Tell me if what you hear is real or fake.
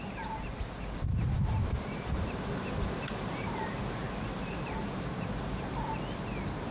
real